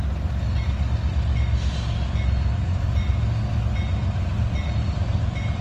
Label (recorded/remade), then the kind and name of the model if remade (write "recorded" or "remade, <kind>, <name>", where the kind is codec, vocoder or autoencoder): recorded